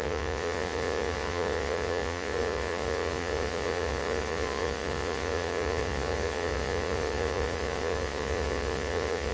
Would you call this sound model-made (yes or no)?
yes